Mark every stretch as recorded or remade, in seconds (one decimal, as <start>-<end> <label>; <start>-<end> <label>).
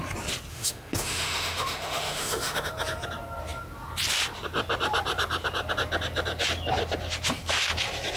0.0-0.5 recorded; 0.5-2.7 remade; 2.7-8.2 recorded